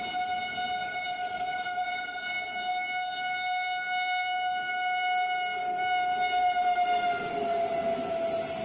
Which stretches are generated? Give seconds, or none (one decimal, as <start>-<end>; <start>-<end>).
1.8-4.7; 5.6-7.3